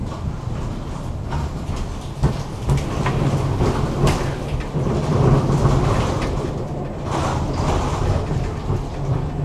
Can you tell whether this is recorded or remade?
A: recorded